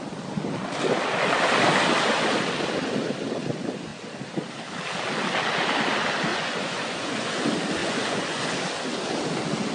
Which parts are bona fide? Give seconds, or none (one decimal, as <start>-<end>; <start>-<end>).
0.0-6.3; 7.3-7.8; 8.5-9.7